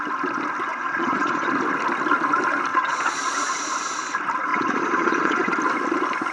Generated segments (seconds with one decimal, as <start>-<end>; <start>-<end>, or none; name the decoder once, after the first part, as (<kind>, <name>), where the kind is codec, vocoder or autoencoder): 0.7-1.5 (vocoder, Vocos); 2.7-3.5; 4.5-5.5